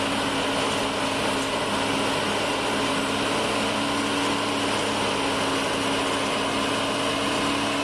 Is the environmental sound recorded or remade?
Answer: recorded